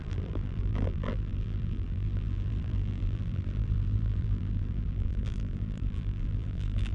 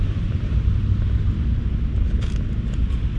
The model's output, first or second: first